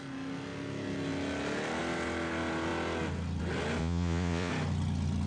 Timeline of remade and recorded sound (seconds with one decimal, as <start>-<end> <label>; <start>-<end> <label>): 0.0-3.8 recorded; 3.8-4.5 remade; 4.5-5.3 recorded